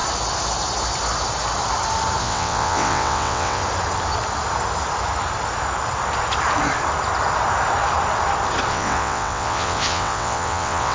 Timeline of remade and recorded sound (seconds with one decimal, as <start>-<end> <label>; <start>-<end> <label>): 0.0-2.2 recorded; 2.2-3.6 remade; 3.6-8.7 recorded; 8.7-10.9 remade